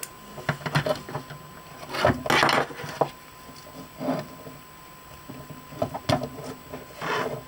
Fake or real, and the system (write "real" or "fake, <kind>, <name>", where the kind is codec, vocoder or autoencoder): real